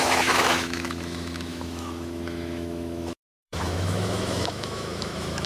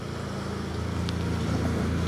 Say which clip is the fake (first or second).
first